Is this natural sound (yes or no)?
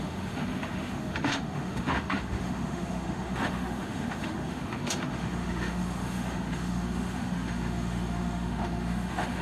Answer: no